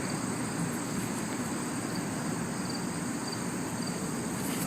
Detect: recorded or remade recorded